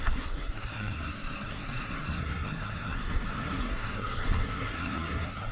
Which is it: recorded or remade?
remade